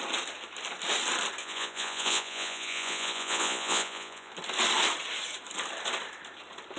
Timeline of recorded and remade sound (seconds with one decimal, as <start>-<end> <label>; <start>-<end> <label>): 0.0-1.4 recorded; 1.4-4.3 remade; 4.3-6.8 recorded